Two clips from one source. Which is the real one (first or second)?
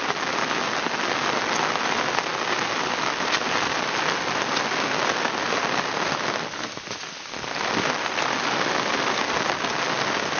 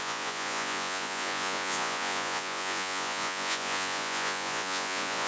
first